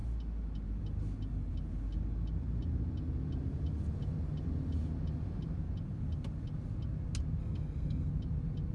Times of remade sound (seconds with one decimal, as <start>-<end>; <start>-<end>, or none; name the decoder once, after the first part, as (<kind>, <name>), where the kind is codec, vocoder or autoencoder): 7.4-8.1 (codec, SNAC)